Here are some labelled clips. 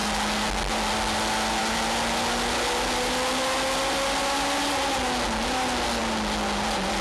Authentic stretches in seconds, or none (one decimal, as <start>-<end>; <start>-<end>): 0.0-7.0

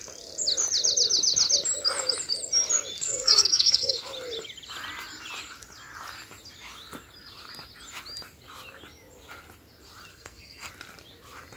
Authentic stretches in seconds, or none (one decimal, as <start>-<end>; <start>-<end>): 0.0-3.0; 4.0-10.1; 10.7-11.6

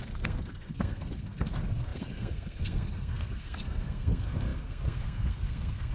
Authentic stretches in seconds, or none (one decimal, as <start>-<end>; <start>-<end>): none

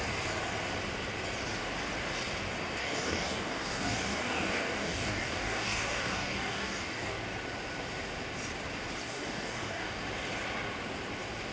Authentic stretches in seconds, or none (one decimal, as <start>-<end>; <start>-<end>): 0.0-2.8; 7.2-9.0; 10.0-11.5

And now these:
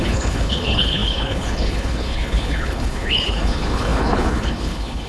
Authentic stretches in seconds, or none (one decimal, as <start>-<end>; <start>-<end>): none